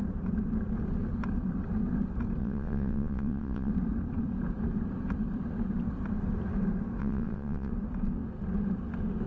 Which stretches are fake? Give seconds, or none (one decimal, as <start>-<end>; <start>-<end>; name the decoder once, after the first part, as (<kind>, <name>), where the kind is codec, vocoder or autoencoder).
2.4-3.7 (vocoder, WaveNeXt); 7.0-7.7